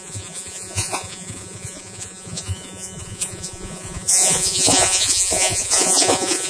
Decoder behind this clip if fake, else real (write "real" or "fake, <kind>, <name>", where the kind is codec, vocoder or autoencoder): fake, vocoder, Vocos